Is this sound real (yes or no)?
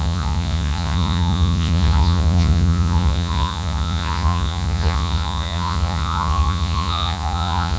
no